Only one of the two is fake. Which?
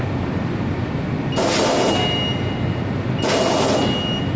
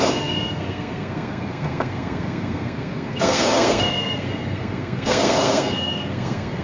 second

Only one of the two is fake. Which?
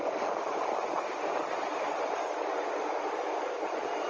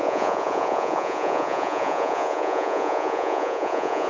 second